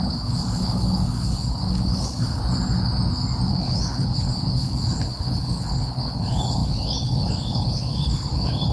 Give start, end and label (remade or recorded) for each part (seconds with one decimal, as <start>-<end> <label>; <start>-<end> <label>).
0.0-2.4 remade; 2.4-3.5 recorded; 3.5-8.7 remade